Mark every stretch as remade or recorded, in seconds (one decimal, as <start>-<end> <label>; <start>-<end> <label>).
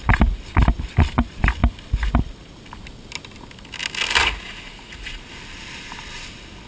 0.0-4.2 recorded; 4.2-5.3 remade; 5.3-6.7 recorded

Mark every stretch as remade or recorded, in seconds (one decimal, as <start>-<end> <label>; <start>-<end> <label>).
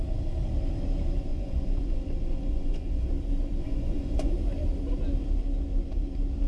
0.0-1.3 recorded; 1.3-3.1 remade; 3.1-3.6 recorded; 3.6-4.3 remade; 4.3-6.5 recorded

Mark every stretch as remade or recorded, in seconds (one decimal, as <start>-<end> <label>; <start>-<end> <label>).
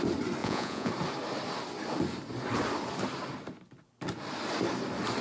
0.0-0.4 recorded; 0.4-0.9 remade; 0.9-5.2 recorded